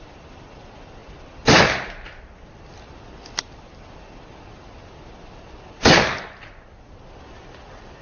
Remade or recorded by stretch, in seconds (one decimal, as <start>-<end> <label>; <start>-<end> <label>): 0.0-8.0 recorded